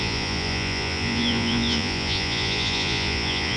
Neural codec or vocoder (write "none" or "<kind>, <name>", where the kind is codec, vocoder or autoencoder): vocoder, Vocos